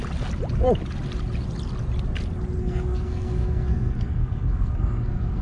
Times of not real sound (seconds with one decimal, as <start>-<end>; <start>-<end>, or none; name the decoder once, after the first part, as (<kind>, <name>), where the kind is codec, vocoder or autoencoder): 2.6-5.4 (codec, SNAC)